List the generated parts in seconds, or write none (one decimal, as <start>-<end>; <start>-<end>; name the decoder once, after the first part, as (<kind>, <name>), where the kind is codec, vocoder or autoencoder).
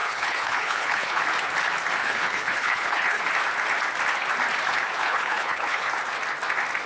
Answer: 0.0-1.2 (codec, HILCodec); 2.0-3.2; 5.0-5.9